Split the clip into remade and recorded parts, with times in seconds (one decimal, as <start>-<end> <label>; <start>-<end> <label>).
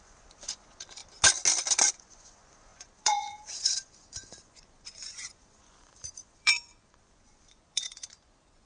0.0-1.0 remade; 1.0-1.9 recorded; 1.9-8.7 remade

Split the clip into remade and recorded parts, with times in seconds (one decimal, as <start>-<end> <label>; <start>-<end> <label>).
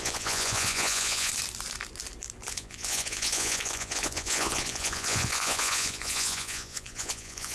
0.0-1.3 remade; 1.3-2.5 recorded; 2.5-7.5 remade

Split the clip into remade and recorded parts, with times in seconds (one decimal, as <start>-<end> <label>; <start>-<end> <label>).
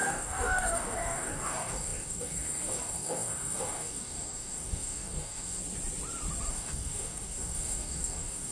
0.0-5.6 remade; 5.6-6.5 recorded; 6.5-8.5 remade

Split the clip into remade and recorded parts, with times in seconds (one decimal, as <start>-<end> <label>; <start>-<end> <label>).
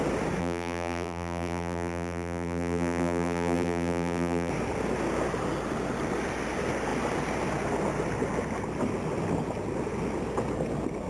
0.0-0.4 recorded; 0.4-4.5 remade; 4.5-11.1 recorded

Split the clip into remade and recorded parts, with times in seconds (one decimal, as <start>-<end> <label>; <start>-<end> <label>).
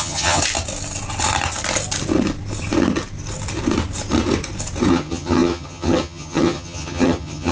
0.0-0.4 remade; 0.4-4.9 recorded; 4.9-7.5 remade